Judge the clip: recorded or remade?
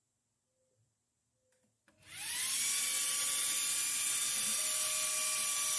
recorded